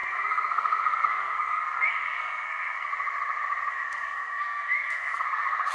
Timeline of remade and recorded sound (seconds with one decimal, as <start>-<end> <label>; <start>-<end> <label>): 0.0-2.9 remade; 2.9-3.7 recorded; 3.7-5.7 remade